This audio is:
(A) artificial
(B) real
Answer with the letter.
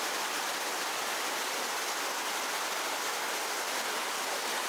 B